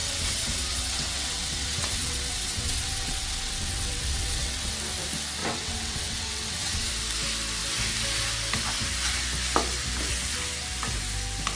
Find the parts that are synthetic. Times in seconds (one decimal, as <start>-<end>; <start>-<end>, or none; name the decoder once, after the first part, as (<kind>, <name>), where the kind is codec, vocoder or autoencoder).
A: 0.0-4.7 (vocoder, WaveNeXt); 5.4-6.9